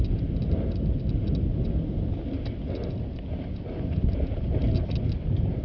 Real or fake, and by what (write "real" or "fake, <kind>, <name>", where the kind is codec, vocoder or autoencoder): real